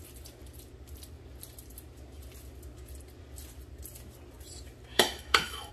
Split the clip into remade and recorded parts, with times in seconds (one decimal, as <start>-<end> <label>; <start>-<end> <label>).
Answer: 0.0-4.9 recorded; 4.9-5.7 remade